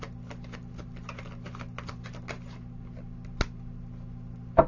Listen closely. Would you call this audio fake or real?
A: real